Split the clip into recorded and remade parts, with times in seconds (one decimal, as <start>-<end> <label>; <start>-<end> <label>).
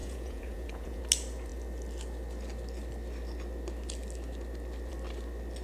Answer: 0.0-1.0 remade; 1.0-5.6 recorded